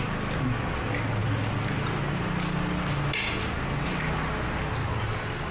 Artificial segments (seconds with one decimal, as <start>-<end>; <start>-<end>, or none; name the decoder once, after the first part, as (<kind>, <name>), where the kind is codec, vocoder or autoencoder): none